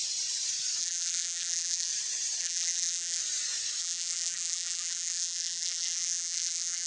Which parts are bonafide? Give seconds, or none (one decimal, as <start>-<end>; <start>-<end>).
0.0-0.8; 1.9-2.4; 3.2-3.8